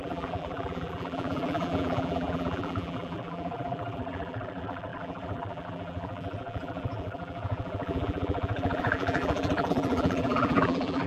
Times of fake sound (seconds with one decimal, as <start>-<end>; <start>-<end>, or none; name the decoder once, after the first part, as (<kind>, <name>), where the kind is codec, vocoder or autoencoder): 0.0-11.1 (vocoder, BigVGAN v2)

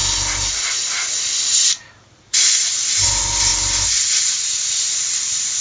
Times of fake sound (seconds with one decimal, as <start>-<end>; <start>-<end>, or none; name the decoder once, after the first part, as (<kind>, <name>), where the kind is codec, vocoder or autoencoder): none

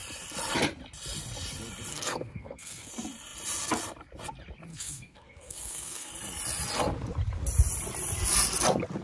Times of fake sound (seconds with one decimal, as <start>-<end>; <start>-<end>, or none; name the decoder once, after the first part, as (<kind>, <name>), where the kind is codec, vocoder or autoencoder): 1.9-2.9 (codec, SNAC); 4.7-6.1